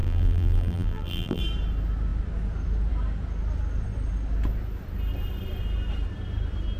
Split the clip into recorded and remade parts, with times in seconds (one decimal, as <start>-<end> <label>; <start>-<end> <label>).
0.0-1.4 remade; 1.4-6.8 recorded

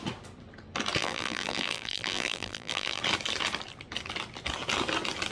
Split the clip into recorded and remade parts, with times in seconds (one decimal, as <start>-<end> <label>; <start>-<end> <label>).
0.0-1.0 recorded; 1.0-3.0 remade; 3.0-5.3 recorded